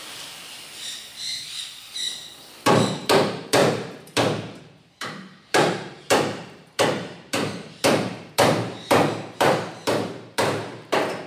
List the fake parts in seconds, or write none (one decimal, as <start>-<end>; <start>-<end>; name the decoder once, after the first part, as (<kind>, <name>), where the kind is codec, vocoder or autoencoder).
0.0-11.3 (vocoder, BigVGAN v2)